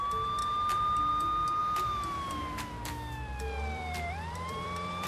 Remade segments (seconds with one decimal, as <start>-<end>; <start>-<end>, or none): 0.4-1.1; 1.6-5.1